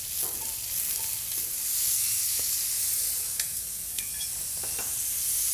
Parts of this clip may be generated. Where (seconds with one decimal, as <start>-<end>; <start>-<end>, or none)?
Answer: 1.8-2.5; 3.2-4.1